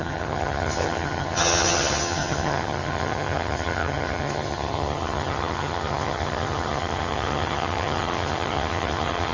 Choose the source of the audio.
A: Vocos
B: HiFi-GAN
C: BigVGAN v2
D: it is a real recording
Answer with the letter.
B